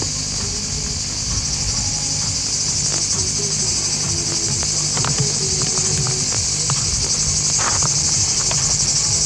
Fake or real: real